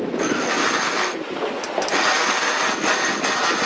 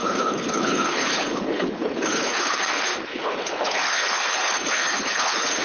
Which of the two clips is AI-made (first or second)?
second